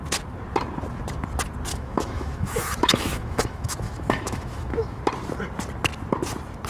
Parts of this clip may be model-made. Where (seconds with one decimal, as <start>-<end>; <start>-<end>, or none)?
1.7-5.0